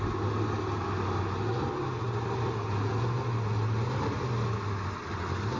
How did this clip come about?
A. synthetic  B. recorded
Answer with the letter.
B